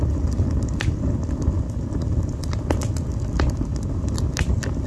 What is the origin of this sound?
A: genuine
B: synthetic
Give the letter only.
A